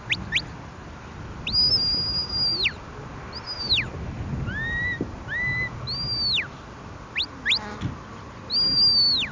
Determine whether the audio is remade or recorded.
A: recorded